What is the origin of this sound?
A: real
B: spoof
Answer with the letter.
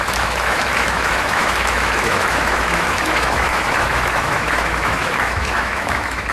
B